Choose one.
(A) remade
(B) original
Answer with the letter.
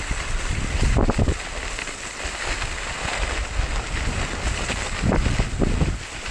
B